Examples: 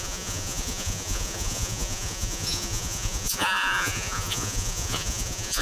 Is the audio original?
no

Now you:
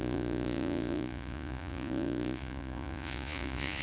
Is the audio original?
no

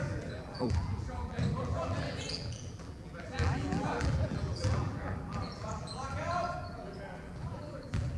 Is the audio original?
no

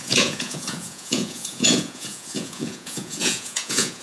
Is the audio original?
no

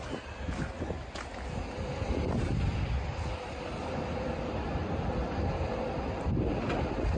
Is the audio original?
yes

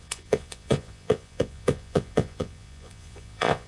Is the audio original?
no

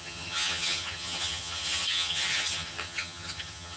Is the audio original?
no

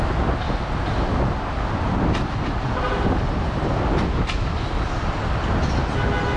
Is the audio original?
yes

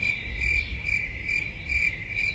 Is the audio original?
yes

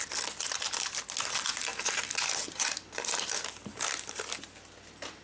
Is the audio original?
yes